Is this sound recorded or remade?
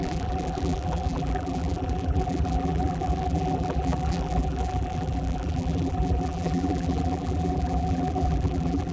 remade